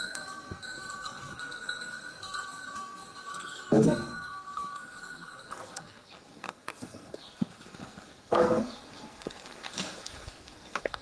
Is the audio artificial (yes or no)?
yes